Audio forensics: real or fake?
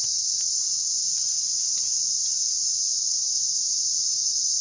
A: real